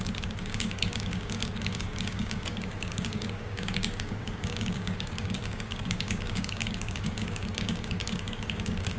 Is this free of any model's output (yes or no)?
no